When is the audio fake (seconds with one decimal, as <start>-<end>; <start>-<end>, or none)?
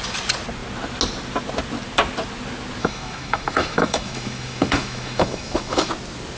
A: 2.8-5.9